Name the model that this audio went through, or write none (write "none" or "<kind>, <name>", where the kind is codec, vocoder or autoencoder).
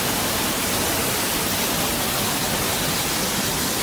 none